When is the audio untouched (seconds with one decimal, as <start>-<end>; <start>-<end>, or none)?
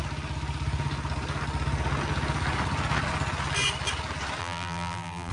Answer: 0.0-4.4